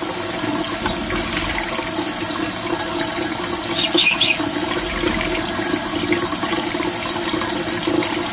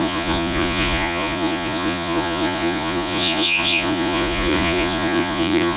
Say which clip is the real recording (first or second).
first